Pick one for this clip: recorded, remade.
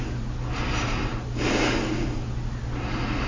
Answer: recorded